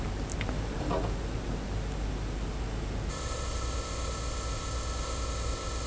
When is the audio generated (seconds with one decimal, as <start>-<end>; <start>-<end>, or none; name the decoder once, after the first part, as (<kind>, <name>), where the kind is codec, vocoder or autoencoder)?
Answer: 3.1-5.9 (codec, ZipCodec)